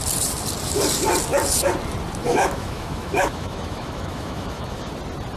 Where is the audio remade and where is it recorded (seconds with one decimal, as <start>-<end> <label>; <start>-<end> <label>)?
0.0-2.3 recorded; 2.3-4.9 remade; 4.9-5.4 recorded